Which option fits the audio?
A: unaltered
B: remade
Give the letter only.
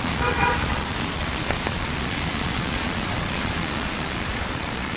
B